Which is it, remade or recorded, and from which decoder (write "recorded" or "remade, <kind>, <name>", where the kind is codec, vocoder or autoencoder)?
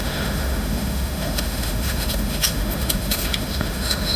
remade, autoencoder, DAC-VAE